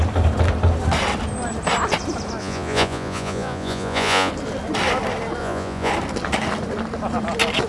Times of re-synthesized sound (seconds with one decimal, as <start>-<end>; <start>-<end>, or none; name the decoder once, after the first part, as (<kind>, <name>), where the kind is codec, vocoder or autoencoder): 2.4-4.3 (vocoder, Vocos); 5.4-5.9

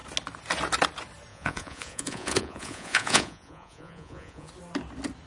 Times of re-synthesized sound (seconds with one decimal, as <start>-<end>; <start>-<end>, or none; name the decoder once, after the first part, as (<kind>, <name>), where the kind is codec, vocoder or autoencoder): 1.3-4.5 (vocoder, Vocos)

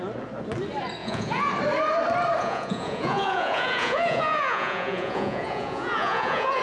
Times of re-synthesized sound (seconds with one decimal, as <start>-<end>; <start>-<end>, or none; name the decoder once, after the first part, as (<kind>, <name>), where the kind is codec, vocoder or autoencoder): 1.0-1.5 (vocoder, Vocos); 2.4-6.6

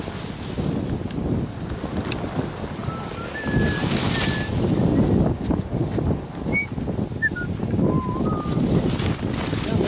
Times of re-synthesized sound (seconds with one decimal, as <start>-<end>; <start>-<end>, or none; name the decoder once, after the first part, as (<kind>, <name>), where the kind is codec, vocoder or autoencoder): none

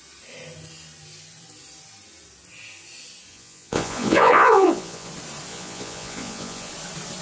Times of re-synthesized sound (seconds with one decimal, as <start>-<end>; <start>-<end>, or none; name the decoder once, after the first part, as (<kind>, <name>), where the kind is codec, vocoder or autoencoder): 3.3-5.1 (vocoder, Vocos); 5.5-6.7

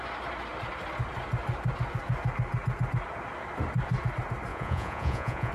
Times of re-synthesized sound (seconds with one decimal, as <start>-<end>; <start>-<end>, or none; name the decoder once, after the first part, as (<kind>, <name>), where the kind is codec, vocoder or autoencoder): 4.5-5.5 (vocoder, Vocos)